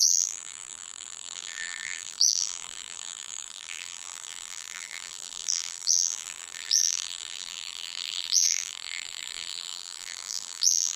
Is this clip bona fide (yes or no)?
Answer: no